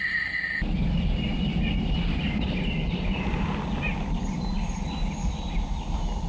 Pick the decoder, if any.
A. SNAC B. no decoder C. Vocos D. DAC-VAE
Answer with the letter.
B